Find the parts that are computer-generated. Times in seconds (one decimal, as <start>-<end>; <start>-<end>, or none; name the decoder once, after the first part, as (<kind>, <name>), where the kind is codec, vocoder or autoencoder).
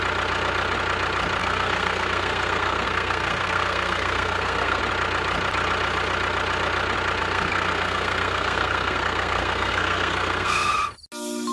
1.4-4.8 (codec, SNAC); 7.2-10.7